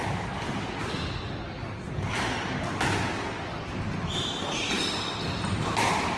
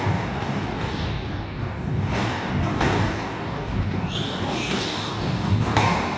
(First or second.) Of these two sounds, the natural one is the first